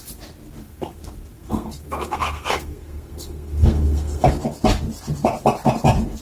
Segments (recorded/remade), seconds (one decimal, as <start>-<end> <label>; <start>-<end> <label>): 0.0-0.6 recorded; 0.6-4.3 remade; 4.3-6.2 recorded

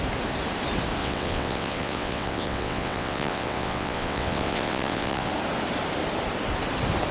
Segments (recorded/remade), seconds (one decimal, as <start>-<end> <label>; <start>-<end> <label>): 0.0-1.0 recorded; 1.0-5.3 remade; 5.3-7.1 recorded

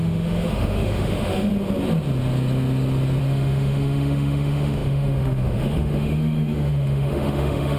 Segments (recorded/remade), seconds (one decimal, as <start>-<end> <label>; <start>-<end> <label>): 0.0-1.5 remade; 1.5-3.2 recorded; 3.2-7.8 remade

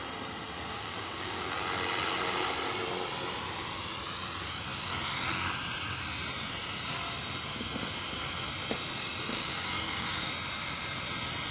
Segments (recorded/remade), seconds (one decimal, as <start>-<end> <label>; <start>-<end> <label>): 0.0-0.7 recorded; 0.7-1.6 remade; 1.6-9.3 recorded; 9.3-10.3 remade; 10.3-11.5 recorded

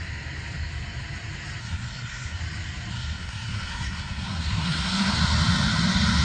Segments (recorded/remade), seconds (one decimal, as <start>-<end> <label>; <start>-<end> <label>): 0.0-1.6 recorded; 1.6-2.4 remade; 2.4-2.9 recorded; 2.9-5.2 remade; 5.2-6.2 recorded